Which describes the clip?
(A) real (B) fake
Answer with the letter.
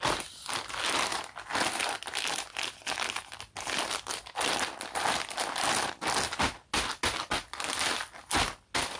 A